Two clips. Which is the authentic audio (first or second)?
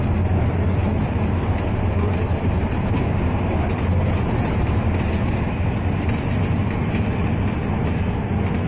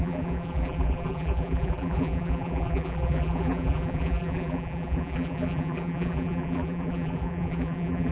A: first